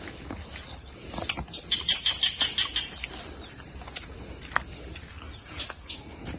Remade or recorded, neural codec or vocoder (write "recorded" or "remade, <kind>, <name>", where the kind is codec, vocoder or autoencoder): recorded